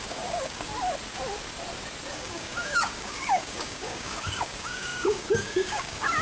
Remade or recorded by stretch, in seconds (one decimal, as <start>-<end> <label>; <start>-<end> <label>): 0.0-0.7 remade; 0.7-2.1 recorded; 2.1-6.2 remade